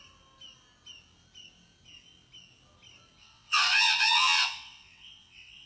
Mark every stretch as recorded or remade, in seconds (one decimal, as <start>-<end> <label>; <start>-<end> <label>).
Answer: 0.0-3.2 recorded; 3.2-5.7 remade

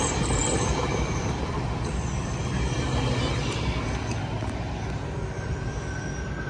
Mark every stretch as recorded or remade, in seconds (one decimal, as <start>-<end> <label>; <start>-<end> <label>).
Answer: 0.0-6.5 recorded

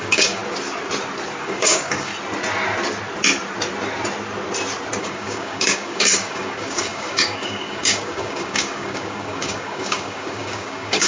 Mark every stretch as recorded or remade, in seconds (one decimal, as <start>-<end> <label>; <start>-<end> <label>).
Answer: 0.0-0.4 remade; 0.4-1.4 recorded; 1.4-2.1 remade; 2.1-5.0 recorded; 5.0-11.1 remade

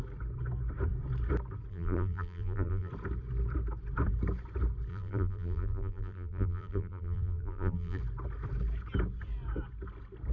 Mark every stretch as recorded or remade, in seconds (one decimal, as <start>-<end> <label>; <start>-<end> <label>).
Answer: 0.0-1.7 recorded; 1.7-2.9 remade; 2.9-4.9 recorded; 4.9-8.0 remade; 8.0-10.3 recorded

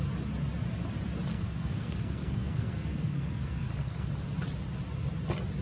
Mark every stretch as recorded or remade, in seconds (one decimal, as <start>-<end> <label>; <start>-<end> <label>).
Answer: 0.0-1.3 recorded; 1.3-4.1 remade; 4.1-5.6 recorded

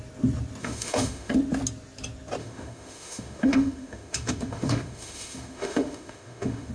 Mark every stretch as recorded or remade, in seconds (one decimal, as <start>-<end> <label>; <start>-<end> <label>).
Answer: 0.0-0.6 recorded; 0.6-1.3 remade; 1.3-2.4 recorded; 2.4-6.7 remade

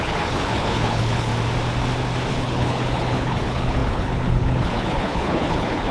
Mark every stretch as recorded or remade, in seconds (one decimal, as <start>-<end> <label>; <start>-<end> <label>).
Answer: 0.0-1.3 remade; 1.3-2.3 recorded; 2.3-5.9 remade